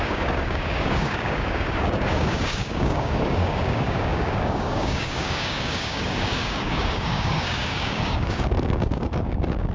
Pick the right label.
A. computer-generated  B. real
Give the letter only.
A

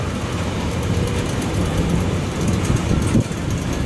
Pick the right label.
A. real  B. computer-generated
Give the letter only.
A